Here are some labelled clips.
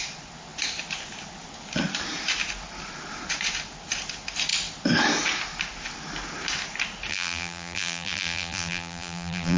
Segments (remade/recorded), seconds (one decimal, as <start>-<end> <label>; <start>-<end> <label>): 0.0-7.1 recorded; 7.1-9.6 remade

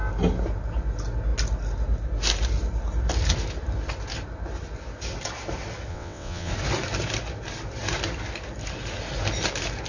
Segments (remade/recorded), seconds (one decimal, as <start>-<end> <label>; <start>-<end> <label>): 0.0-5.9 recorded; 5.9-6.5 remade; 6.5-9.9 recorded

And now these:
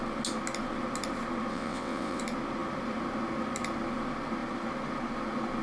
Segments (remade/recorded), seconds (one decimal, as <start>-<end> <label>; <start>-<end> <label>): 0.0-1.5 recorded; 1.5-2.2 remade; 2.2-5.6 recorded

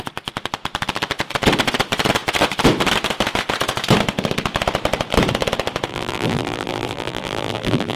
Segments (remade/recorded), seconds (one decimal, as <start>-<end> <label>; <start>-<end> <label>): 0.0-5.9 recorded; 5.9-8.0 remade

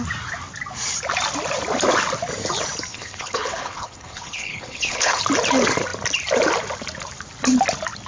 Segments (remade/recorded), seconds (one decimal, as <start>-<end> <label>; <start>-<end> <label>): 0.0-2.9 recorded; 2.9-5.2 remade; 5.2-8.1 recorded